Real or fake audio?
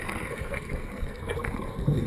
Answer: fake